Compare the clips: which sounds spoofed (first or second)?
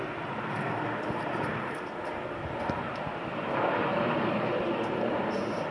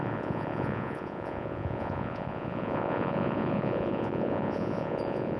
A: second